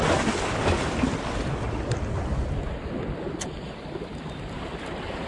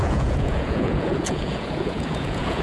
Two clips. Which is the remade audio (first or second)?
second